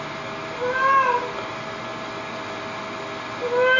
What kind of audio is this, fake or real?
real